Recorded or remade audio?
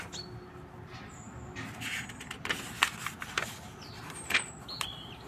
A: recorded